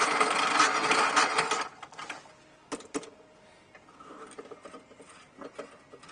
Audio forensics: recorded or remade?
recorded